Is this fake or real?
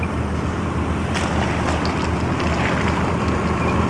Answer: real